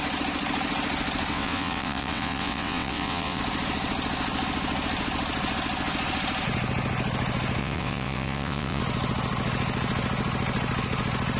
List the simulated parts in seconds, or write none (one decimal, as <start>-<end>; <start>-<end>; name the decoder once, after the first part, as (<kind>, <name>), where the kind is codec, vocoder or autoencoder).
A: 1.3-3.4 (vocoder, WaveNeXt); 7.6-8.8